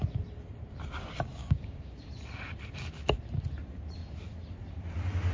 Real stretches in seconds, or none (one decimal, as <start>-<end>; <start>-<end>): 0.0-1.4; 2.0-5.3